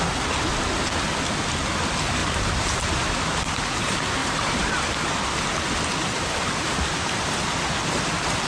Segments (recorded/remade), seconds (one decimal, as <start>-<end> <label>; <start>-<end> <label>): 0.0-2.2 recorded; 2.2-3.1 remade; 3.1-4.2 recorded; 4.2-4.7 remade; 4.7-5.9 recorded; 5.9-6.9 remade; 6.9-8.5 recorded